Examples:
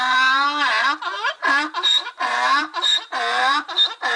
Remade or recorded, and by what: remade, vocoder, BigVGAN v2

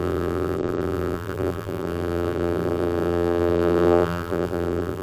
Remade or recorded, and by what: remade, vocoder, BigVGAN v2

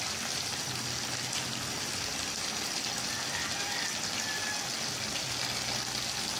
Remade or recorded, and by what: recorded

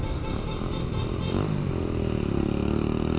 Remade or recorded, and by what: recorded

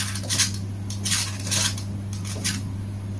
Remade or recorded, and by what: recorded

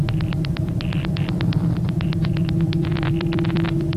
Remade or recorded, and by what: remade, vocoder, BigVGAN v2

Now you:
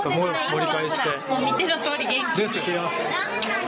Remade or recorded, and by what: recorded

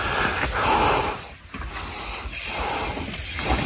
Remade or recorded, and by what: recorded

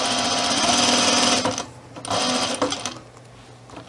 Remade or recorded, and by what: recorded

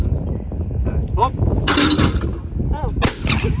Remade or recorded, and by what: recorded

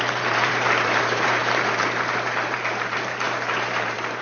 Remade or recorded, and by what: remade, vocoder, BigVGAN v2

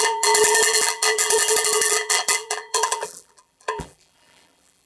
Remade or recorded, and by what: remade, vocoder, BigVGAN v2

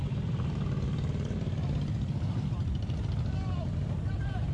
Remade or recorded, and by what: remade, vocoder, BigVGAN v2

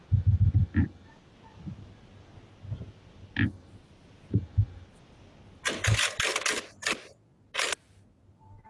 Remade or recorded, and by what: recorded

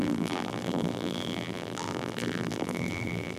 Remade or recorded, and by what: remade, vocoder, BigVGAN v2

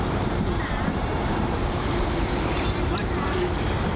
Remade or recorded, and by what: remade, vocoder, BigVGAN v2